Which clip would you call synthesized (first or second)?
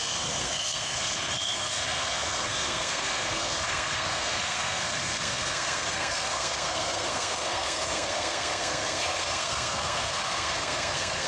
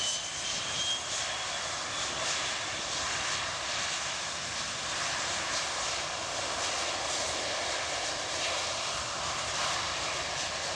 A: first